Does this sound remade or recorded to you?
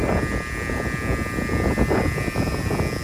recorded